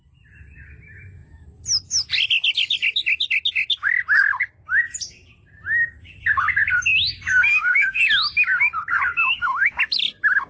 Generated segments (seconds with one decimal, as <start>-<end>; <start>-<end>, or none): 7.5-8.0; 9.2-9.8